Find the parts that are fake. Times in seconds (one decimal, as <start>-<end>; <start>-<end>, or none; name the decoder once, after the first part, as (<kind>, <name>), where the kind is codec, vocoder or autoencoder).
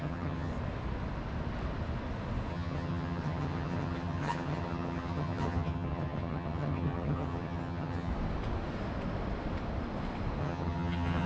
0.0-0.5 (vocoder, HiFi-GAN); 2.5-8.1; 10.4-11.3